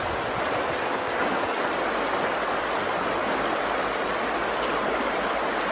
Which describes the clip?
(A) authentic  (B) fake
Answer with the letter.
A